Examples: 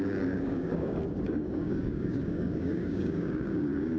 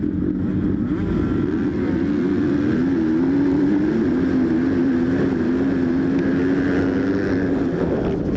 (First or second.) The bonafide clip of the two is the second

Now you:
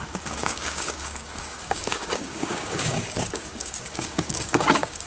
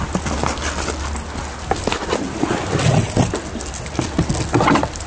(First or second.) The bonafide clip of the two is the second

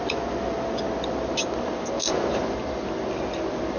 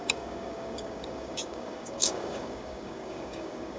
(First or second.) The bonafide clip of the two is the first